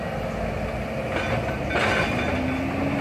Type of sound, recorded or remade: recorded